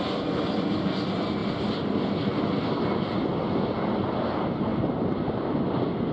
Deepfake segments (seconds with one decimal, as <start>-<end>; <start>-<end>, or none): none